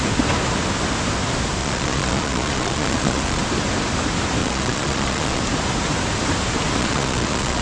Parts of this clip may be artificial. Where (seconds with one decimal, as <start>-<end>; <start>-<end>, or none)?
1.6-3.4; 4.4-5.4; 6.8-7.6